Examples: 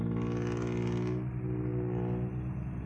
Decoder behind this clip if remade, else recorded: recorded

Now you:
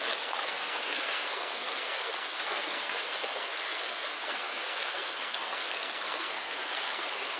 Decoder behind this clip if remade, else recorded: remade, codec, SNAC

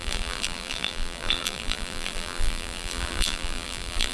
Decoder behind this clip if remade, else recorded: remade, vocoder, BigVGAN v2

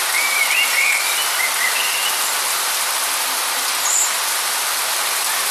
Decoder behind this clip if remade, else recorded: recorded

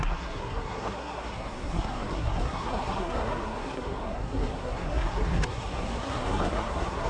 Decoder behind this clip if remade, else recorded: remade, codec, SNAC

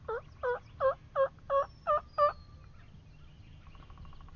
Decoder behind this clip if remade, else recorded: recorded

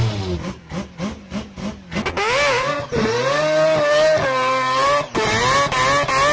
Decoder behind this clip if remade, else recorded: recorded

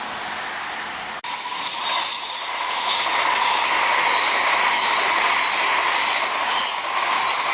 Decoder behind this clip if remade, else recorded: recorded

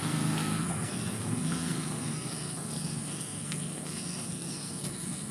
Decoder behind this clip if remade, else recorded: remade, codec, SNAC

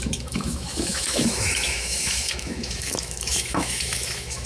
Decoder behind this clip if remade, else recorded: remade, autoencoder, DAC-VAE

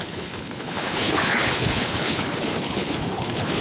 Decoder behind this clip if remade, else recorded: remade, codec, HILCodec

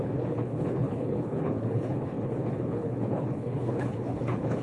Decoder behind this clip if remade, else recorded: remade, codec, HILCodec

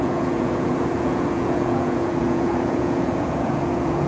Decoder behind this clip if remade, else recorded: remade, vocoder, Vocos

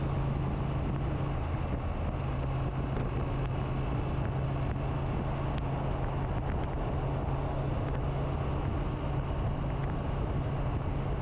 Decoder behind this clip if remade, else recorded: recorded